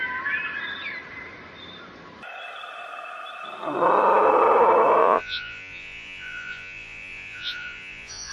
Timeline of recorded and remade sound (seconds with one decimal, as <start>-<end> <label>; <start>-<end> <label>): 0.0-5.0 recorded; 5.0-8.3 remade